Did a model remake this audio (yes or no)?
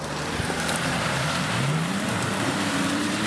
yes